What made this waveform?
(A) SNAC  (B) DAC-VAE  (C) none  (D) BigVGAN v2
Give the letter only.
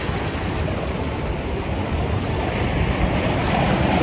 C